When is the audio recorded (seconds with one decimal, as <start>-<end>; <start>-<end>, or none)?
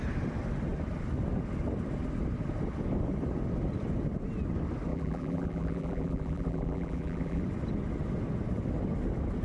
0.0-4.9; 7.4-9.4